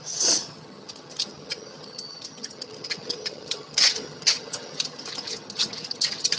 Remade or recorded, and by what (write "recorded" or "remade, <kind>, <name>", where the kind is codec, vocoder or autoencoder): remade, vocoder, HiFi-GAN